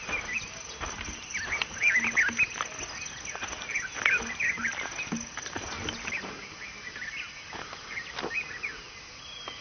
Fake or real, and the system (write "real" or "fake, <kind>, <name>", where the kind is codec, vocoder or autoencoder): real